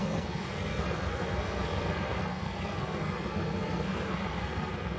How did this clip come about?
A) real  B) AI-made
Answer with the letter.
B